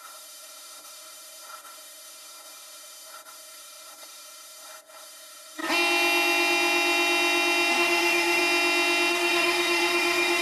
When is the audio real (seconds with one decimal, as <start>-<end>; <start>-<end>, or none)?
5.6-7.7; 8.4-9.1